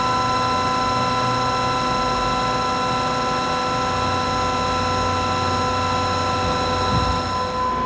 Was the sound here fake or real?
real